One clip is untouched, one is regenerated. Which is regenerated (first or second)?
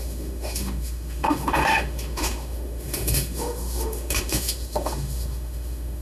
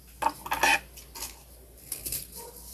first